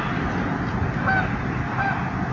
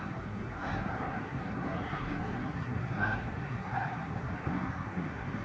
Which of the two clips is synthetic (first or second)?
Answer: second